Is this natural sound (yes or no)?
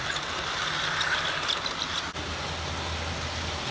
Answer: yes